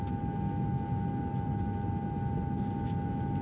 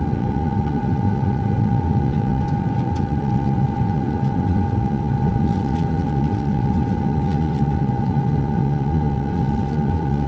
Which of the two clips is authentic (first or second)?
first